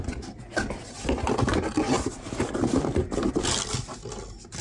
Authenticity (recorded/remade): recorded